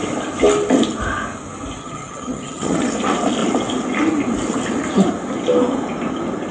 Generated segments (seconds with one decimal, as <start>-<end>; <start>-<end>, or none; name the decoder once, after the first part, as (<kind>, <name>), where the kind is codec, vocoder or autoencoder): 1.8-2.9 (vocoder, HiFi-GAN)